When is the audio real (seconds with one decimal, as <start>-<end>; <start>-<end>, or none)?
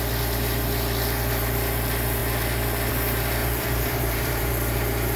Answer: 0.0-3.4; 4.5-5.2